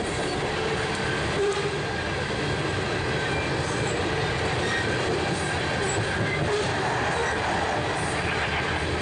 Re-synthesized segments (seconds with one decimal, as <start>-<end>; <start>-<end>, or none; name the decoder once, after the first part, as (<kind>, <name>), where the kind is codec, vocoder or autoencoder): none